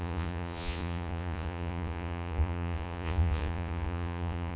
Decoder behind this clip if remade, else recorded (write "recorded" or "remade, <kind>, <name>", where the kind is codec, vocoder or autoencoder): remade, vocoder, Vocos